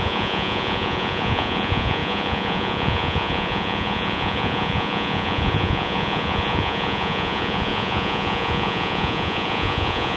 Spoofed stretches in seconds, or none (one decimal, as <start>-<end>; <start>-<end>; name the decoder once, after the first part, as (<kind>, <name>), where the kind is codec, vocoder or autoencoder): 0.0-10.2 (vocoder, Vocos)